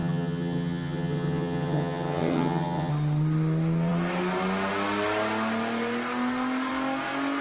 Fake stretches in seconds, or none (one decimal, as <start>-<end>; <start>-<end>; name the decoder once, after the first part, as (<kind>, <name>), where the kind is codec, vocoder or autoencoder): 0.0-2.9 (vocoder, HiFi-GAN)